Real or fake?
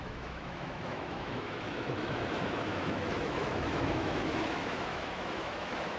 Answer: fake